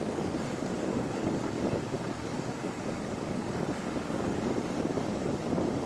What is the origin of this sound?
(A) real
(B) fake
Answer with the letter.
B